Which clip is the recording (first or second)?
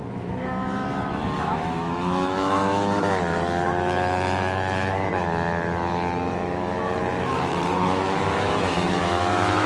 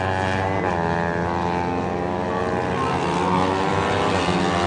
second